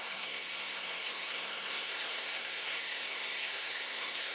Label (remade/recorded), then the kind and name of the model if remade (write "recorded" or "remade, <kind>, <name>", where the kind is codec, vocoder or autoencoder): remade, codec, SNAC